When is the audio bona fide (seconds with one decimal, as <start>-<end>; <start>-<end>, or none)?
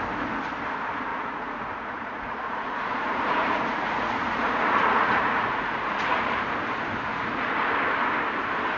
0.0-1.1; 6.4-7.1; 7.7-8.8